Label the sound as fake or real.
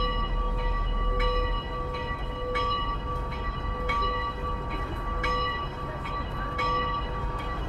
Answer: fake